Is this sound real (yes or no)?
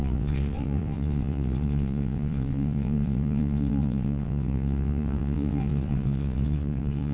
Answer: no